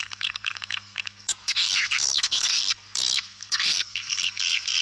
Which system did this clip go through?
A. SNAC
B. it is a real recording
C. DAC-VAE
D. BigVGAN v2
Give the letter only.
A